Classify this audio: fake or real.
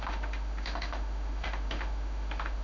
fake